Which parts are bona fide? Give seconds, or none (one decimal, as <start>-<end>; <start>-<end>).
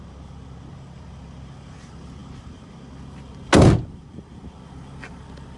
0.0-5.6